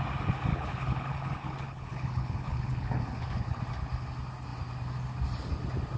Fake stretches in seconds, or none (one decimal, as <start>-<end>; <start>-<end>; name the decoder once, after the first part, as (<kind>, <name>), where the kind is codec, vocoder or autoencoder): 0.5-3.6 (codec, HILCodec)